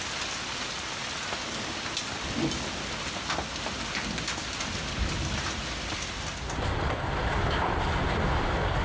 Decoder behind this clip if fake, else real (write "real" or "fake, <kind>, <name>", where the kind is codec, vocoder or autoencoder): real